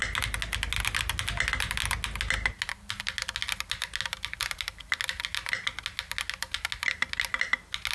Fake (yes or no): no